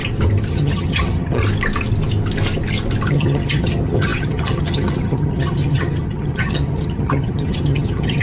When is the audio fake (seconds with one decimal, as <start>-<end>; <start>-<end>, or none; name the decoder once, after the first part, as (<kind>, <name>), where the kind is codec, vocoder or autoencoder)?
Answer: 0.5-1.4 (vocoder, HiFi-GAN); 3.1-8.2

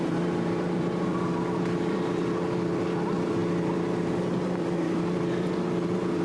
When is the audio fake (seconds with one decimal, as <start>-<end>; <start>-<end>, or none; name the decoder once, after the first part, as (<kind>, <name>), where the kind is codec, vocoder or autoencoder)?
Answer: none

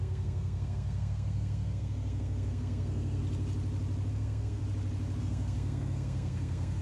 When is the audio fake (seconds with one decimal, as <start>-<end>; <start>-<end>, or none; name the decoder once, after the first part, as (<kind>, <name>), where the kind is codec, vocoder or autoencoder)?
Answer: 0.0-3.2 (codec, SNAC); 4.1-4.6; 5.2-6.8

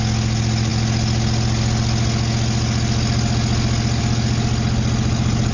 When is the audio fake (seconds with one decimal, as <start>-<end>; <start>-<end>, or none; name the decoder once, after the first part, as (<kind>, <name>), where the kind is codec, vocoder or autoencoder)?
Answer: none

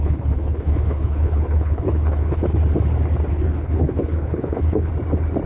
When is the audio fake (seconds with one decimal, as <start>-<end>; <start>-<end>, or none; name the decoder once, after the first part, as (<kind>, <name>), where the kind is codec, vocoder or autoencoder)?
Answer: 0.0-2.4 (codec, HILCodec); 3.3-4.9